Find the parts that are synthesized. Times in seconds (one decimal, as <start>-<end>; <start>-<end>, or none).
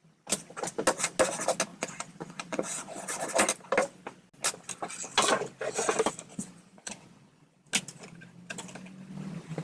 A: 1.7-3.3; 6.3-7.6